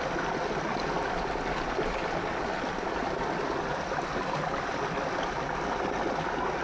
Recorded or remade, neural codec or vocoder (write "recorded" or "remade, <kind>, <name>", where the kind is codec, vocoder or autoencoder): recorded